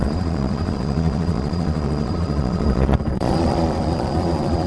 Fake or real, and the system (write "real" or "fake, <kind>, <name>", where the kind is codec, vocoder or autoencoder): fake, vocoder, Vocos